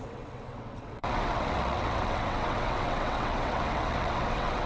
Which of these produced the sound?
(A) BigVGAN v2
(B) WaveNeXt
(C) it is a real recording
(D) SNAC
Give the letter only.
B